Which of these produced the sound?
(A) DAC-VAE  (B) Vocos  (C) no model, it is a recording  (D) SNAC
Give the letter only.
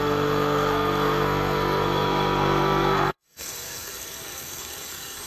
D